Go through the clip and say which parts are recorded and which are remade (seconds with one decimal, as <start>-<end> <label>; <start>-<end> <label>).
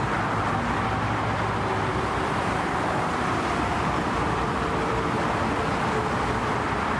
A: 0.0-1.9 recorded; 1.9-5.4 remade; 5.4-7.0 recorded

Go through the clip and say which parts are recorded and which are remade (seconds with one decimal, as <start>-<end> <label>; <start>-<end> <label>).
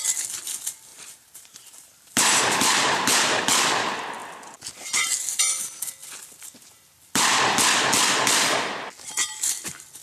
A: 0.0-0.9 recorded; 0.9-3.4 remade; 3.4-10.0 recorded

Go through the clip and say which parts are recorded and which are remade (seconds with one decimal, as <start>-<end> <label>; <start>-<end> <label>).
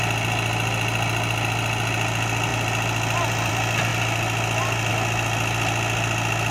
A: 0.0-6.5 recorded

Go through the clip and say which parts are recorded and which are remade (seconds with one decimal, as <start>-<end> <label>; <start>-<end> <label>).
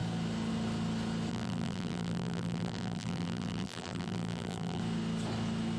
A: 0.0-1.3 recorded; 1.3-4.8 remade; 4.8-5.8 recorded